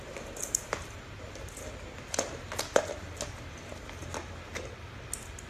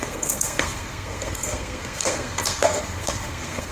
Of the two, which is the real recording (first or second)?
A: first